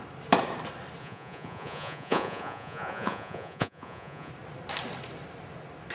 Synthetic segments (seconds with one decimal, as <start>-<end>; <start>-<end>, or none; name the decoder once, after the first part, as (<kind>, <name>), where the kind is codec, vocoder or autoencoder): 1.0-4.3 (vocoder, Vocos)